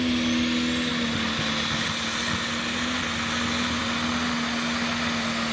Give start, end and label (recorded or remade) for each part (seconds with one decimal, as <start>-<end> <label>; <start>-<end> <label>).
0.0-5.5 recorded

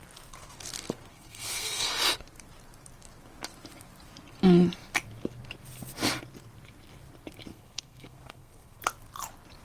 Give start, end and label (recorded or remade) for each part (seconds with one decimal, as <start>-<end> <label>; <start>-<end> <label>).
0.0-1.1 recorded; 1.1-1.9 remade; 1.9-7.5 recorded; 7.5-8.8 remade; 8.8-9.6 recorded

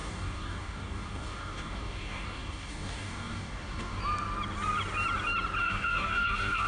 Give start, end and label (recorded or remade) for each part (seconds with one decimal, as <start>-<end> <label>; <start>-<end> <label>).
0.0-4.0 remade; 4.0-5.6 recorded; 5.6-6.7 remade

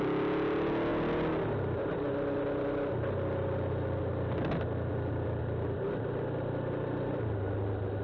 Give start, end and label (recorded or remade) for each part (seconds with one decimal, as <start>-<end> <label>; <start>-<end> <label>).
0.0-8.0 recorded

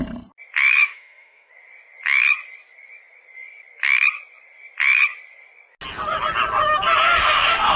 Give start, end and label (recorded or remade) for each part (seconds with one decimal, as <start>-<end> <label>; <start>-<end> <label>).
0.0-0.8 recorded; 0.8-1.5 remade; 1.5-7.2 recorded; 7.2-7.8 remade

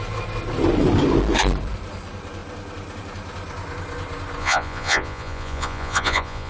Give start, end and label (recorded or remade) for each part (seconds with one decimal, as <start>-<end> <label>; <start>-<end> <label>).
0.0-4.4 recorded; 4.4-6.5 remade